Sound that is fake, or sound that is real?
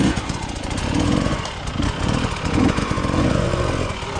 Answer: fake